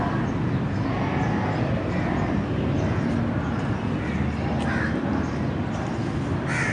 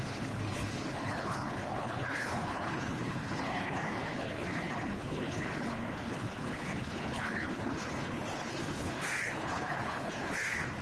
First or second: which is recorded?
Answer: first